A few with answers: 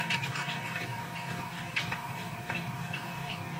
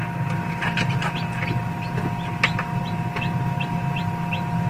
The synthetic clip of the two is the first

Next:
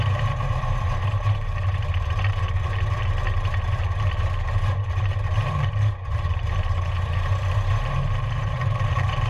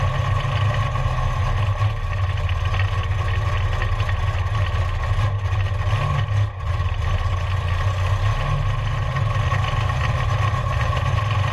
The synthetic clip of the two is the first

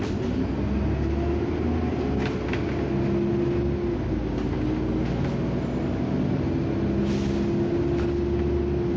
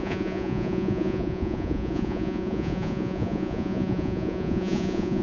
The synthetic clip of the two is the second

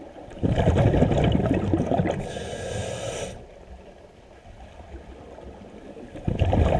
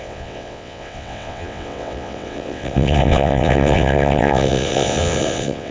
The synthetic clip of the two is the second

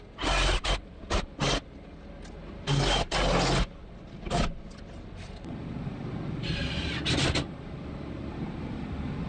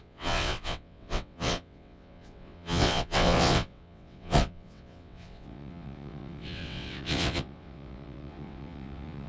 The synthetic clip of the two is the second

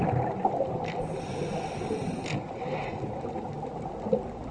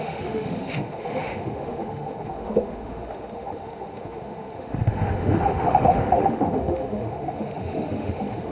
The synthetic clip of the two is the second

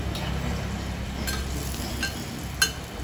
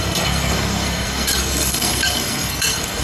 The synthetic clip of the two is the second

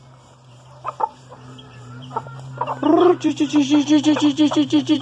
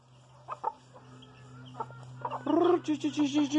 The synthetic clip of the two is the first